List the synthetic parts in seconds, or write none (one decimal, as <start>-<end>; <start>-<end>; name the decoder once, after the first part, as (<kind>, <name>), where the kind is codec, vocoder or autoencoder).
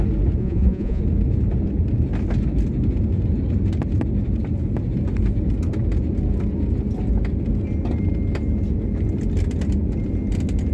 0.4-1.0 (vocoder, Vocos)